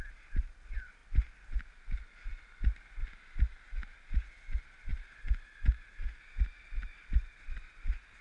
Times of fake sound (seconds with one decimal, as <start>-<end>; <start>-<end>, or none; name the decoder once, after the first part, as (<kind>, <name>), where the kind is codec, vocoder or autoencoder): none

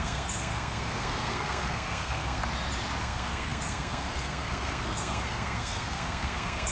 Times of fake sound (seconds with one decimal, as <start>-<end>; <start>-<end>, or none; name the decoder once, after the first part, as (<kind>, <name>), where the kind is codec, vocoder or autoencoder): 0.0-2.4 (codec, SNAC); 3.0-6.7

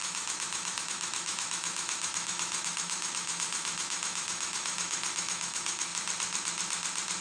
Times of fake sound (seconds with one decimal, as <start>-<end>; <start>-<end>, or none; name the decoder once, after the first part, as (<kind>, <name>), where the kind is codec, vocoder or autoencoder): 0.0-5.9 (autoencoder, DAC-VAE)

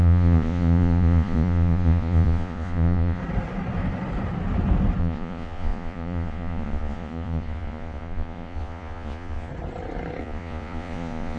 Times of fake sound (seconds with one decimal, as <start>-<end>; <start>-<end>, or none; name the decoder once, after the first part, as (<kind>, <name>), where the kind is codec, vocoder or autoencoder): 0.0-3.2 (vocoder, Vocos); 5.0-9.5; 10.2-11.4

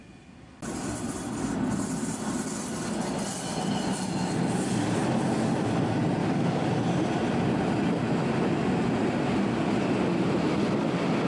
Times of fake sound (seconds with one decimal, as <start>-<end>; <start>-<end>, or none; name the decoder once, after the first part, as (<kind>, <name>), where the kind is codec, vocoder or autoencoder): 6.2-6.7 (codec, DAC)

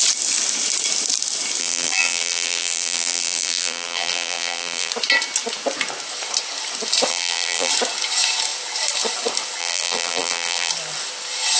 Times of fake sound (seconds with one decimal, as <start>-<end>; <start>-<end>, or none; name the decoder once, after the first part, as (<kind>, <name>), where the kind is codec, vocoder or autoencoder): 1.6-4.9 (vocoder, BigVGAN v2); 7.1-7.7; 9.6-10.7

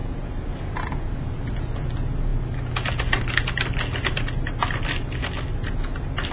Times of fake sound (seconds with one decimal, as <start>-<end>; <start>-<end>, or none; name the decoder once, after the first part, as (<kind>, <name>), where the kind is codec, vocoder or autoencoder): none